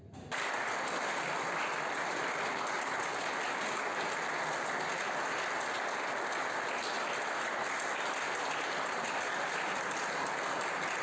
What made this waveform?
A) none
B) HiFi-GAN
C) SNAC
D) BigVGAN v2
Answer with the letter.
A